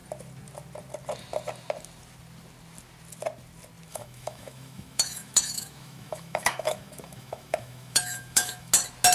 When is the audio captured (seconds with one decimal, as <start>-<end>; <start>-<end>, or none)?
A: 0.0-3.9; 8.7-9.1